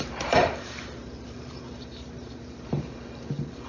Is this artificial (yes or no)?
yes